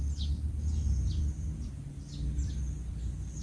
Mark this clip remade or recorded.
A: recorded